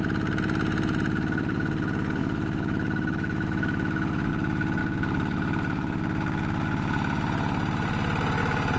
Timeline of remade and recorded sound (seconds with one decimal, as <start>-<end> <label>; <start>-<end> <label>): 0.0-2.2 recorded; 2.2-4.3 remade; 4.3-8.8 recorded